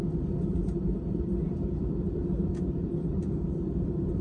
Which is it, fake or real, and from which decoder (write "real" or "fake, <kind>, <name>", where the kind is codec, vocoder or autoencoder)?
fake, vocoder, BigVGAN v2